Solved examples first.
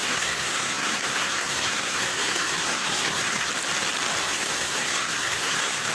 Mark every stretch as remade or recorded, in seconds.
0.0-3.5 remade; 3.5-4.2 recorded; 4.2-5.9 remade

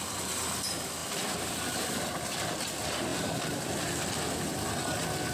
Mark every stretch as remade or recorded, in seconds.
0.0-5.3 recorded

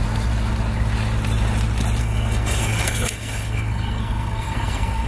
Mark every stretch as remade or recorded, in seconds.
0.0-2.0 recorded; 2.0-5.1 remade

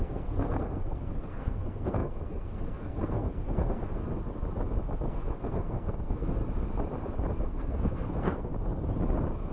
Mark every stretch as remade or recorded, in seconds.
0.0-4.0 remade; 4.0-5.1 recorded; 5.1-6.4 remade; 6.4-7.4 recorded; 7.4-8.5 remade; 8.5-9.5 recorded

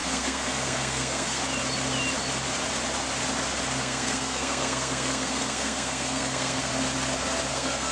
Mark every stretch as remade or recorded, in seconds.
0.0-1.4 remade; 1.4-3.8 recorded; 3.8-6.7 remade; 6.7-7.5 recorded; 7.5-7.9 remade